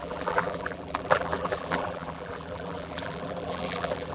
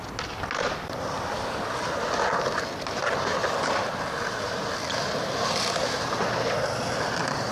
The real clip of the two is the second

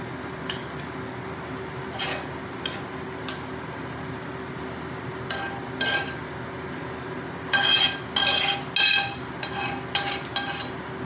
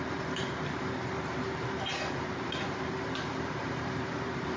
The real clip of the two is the first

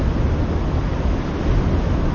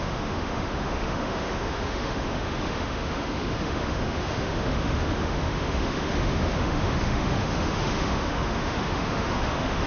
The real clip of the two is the first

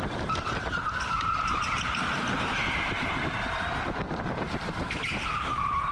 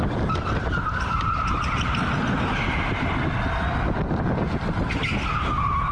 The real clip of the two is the second